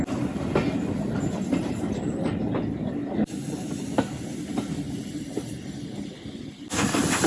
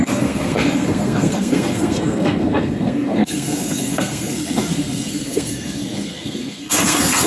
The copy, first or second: second